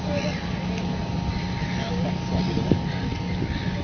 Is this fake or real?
real